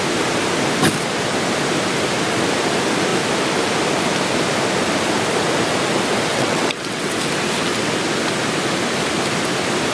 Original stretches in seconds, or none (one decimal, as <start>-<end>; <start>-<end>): 0.0-6.3; 7.1-9.9

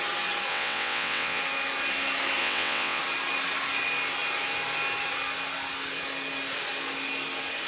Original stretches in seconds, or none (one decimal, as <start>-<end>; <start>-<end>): 0.0-0.5; 1.4-2.4; 3.0-7.7

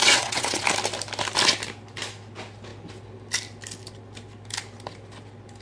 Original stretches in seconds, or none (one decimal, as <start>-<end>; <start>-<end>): 0.6-5.6

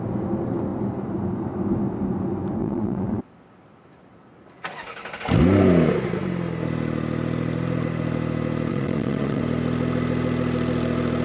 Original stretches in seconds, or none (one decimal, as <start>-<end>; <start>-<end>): 0.0-2.6; 3.2-8.7; 9.4-11.2